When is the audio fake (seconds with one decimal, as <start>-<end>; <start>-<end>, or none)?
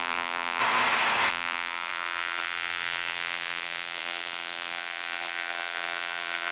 0.0-0.6; 1.3-6.5